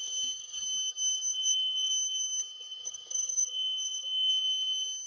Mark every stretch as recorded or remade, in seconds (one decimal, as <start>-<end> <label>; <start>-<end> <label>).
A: 0.0-1.3 recorded; 1.3-1.9 remade; 1.9-2.8 recorded; 2.8-4.3 remade; 4.3-5.1 recorded

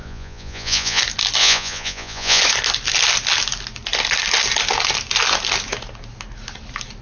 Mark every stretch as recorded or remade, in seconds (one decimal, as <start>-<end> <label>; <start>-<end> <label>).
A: 0.0-1.0 remade; 1.0-1.4 recorded; 1.4-2.4 remade; 2.4-7.0 recorded

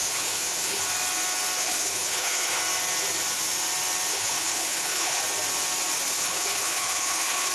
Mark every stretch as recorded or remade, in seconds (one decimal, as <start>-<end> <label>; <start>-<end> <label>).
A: 0.0-0.8 remade; 0.8-1.6 recorded; 1.6-2.6 remade; 2.6-4.1 recorded; 4.1-5.2 remade; 5.2-6.2 recorded; 6.2-7.5 remade

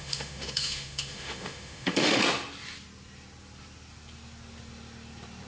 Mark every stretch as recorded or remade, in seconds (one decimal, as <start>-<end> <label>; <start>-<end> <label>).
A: 0.0-2.2 remade; 2.2-5.5 recorded

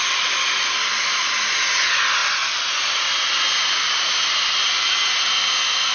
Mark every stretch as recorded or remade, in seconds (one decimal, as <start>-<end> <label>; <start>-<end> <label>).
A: 0.0-5.9 recorded

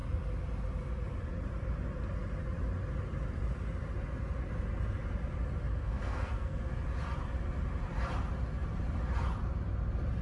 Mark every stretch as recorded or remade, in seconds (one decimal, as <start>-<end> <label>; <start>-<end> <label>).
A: 0.0-5.7 recorded; 5.7-6.6 remade; 6.6-10.2 recorded